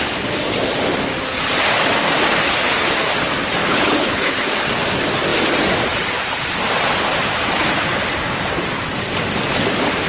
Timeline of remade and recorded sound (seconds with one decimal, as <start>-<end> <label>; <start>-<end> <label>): 0.0-3.6 recorded; 3.6-4.4 remade; 4.4-10.1 recorded